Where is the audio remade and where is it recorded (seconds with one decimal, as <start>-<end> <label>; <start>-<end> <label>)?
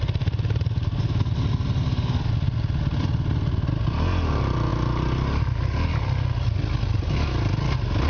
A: 0.0-8.1 recorded